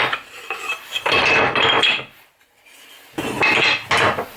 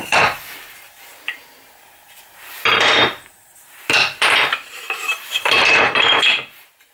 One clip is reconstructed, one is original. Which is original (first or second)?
first